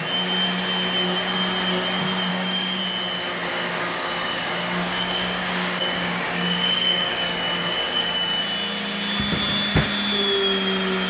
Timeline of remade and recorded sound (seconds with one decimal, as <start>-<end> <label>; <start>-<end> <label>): 0.0-2.3 recorded; 2.3-2.8 remade; 2.8-3.5 recorded; 3.5-8.4 remade; 8.4-11.1 recorded